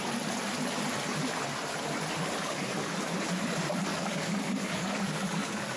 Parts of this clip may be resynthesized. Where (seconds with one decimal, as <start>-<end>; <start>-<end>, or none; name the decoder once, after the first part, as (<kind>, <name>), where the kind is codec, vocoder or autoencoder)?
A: 2.4-3.1 (codec, DAC); 3.9-5.8

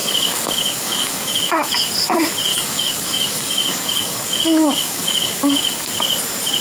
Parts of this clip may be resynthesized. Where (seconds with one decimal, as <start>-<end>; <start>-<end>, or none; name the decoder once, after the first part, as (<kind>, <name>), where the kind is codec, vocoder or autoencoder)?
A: 0.0-1.7 (codec, DAC); 2.5-5.9

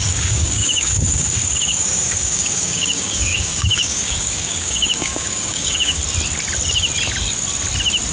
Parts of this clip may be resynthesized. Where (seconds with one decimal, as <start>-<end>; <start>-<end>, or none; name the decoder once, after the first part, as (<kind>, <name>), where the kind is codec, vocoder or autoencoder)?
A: 0.0-6.0 (codec, DAC)

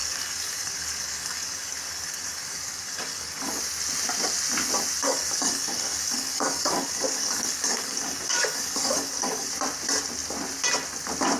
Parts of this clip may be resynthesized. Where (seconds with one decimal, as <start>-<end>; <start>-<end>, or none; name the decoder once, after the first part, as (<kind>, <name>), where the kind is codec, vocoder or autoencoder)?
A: 0.0-3.6 (codec, DAC); 5.0-9.5

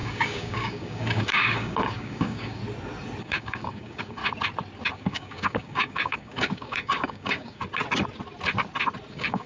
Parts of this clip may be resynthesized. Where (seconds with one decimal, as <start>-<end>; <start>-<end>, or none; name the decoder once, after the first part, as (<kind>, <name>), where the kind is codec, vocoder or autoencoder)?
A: 0.0-2.6 (codec, DAC); 3.2-4.2; 4.9-7.6; 9.1-9.5

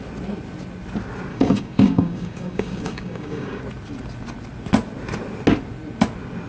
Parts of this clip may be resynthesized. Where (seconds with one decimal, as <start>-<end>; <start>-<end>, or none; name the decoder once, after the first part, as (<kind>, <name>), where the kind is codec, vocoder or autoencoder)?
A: 1.3-3.6 (codec, DAC)

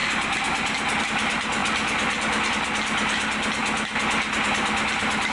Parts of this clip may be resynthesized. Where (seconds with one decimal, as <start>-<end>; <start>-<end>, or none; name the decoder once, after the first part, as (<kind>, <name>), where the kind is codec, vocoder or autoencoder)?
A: none

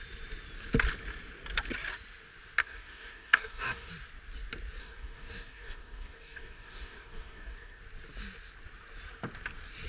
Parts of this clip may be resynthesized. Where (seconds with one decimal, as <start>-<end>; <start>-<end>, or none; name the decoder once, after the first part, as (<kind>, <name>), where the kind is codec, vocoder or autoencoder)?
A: 2.6-3.9 (codec, DAC); 4.8-7.8